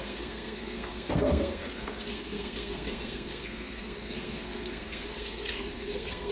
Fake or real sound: fake